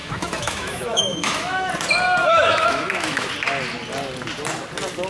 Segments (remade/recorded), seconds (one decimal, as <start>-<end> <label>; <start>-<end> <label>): 0.0-1.7 remade; 1.7-2.2 recorded; 2.2-3.3 remade; 3.3-5.1 recorded